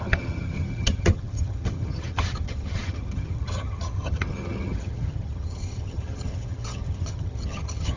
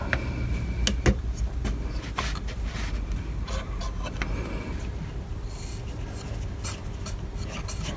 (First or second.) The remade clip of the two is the first